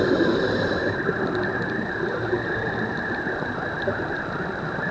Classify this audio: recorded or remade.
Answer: recorded